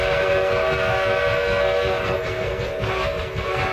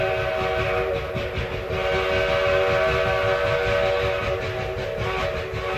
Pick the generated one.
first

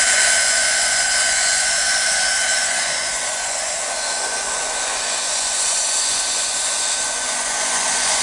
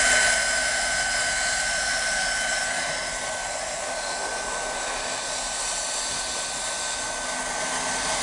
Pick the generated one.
first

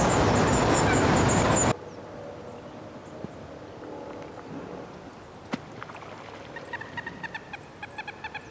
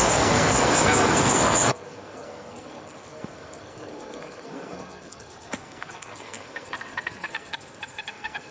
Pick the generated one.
second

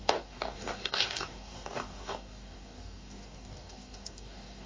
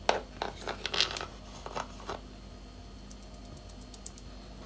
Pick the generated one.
first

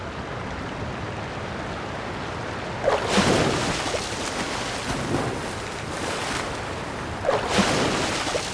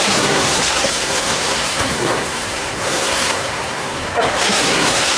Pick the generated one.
second